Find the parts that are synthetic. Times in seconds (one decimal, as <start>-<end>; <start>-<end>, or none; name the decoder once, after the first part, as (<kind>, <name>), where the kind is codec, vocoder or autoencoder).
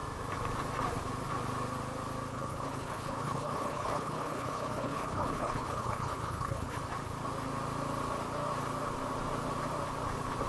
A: 2.3-6.8 (codec, HILCodec)